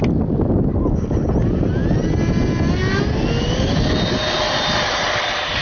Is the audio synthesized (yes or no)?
no